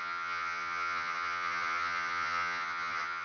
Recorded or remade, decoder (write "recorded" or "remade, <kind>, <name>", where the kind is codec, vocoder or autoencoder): remade, vocoder, HiFi-GAN